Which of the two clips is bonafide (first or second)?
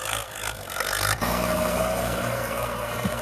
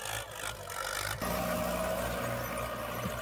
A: second